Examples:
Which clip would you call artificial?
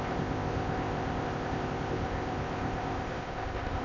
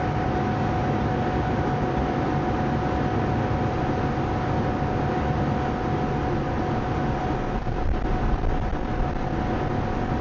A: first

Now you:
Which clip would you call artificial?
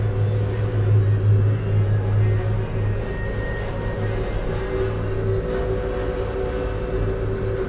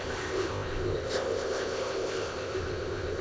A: second